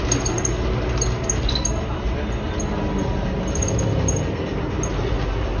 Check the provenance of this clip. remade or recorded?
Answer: recorded